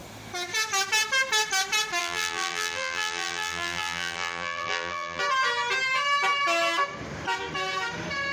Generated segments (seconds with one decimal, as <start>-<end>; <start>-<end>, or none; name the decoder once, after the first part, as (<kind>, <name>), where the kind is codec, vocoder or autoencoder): 2.0-5.2 (vocoder, BigVGAN v2)

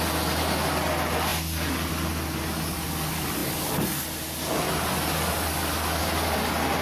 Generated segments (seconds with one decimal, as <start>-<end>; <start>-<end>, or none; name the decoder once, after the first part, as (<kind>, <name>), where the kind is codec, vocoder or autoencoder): none